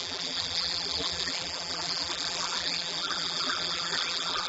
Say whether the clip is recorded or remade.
remade